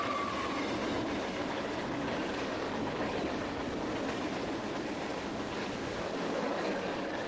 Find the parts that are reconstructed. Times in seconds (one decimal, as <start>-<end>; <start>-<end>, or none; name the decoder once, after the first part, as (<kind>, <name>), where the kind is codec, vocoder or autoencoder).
1.4-3.6 (codec, DAC); 5.1-7.3